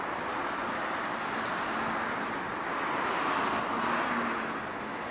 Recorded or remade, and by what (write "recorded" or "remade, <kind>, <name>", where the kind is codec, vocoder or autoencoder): recorded